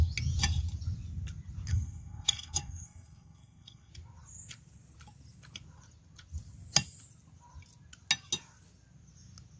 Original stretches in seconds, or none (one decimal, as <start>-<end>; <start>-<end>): 0.0-1.7; 3.9-9.6